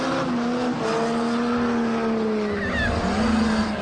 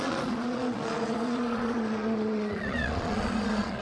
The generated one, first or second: second